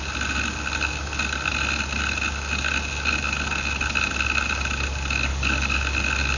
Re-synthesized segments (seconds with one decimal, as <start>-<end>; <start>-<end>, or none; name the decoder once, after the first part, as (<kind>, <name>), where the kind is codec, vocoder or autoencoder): 5.3-5.8 (codec, DAC)